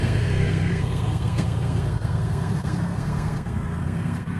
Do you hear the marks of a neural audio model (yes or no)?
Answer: yes